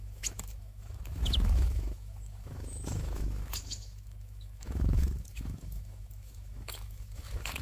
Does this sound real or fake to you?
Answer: fake